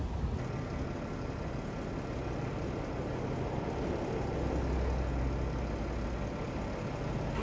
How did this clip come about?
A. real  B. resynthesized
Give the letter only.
A